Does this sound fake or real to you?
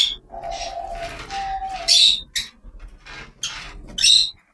real